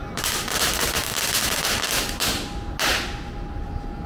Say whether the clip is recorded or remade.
recorded